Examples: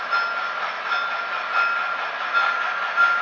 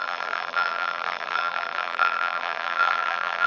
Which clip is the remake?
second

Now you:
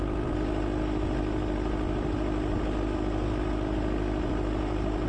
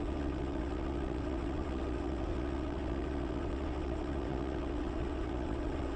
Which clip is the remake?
second